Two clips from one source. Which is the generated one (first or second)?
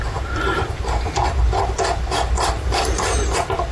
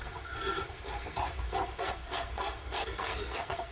second